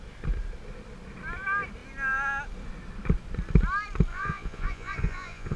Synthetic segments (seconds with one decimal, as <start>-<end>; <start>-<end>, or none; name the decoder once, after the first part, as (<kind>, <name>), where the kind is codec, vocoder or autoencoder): 4.1-5.6 (vocoder, Vocos)